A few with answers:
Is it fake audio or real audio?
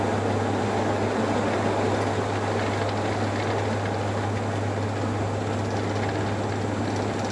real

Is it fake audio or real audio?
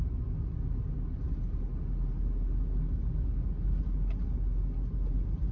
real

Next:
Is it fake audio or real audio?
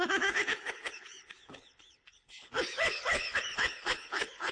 fake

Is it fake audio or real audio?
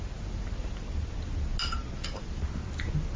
real